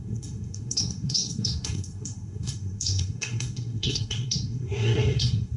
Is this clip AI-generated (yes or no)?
yes